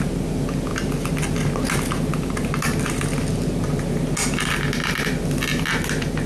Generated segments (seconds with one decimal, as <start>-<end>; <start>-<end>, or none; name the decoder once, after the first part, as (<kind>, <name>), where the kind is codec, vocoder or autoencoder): none